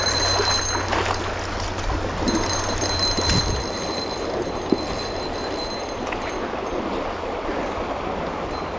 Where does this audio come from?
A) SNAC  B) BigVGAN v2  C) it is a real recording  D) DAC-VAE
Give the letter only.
C